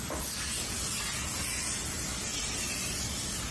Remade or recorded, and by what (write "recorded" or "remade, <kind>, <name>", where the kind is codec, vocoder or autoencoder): recorded